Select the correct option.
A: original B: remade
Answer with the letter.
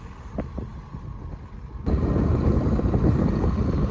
A